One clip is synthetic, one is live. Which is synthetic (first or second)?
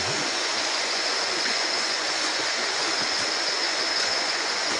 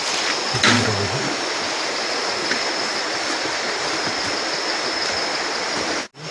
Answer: first